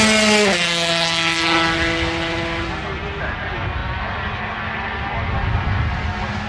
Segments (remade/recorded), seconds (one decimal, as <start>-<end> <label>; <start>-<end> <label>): 0.0-6.5 recorded